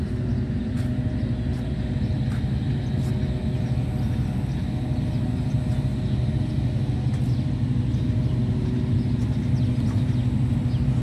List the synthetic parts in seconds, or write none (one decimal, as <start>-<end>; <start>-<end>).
none